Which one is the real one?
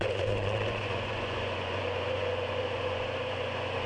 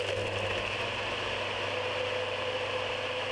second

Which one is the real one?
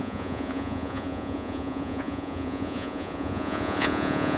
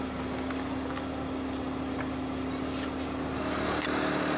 second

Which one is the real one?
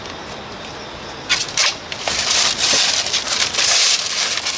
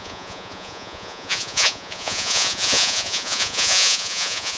first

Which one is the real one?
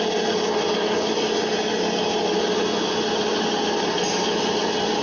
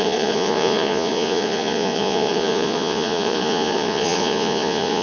first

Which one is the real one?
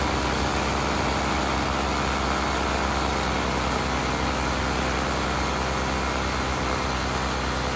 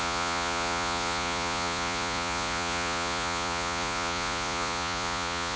first